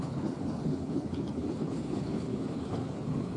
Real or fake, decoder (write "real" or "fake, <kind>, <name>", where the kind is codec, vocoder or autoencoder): fake, codec, HILCodec